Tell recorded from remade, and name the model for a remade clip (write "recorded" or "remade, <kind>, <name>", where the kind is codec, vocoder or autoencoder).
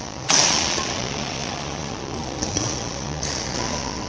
remade, vocoder, Vocos